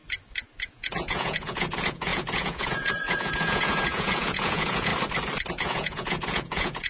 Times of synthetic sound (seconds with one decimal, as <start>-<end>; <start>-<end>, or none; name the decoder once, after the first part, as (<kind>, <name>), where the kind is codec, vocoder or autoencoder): 0.7-4.9 (vocoder, Vocos); 5.5-6.9